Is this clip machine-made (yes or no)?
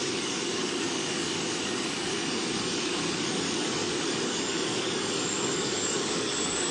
yes